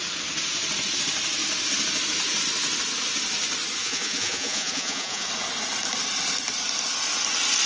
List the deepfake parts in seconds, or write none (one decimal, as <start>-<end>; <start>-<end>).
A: 3.8-5.3